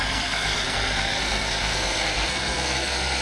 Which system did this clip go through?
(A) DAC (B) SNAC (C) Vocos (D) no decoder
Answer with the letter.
B